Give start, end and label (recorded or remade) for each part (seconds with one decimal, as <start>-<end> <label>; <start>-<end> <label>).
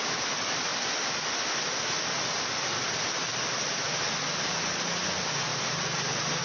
0.0-6.4 recorded